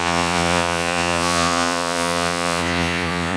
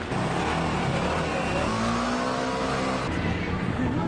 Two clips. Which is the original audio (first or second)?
second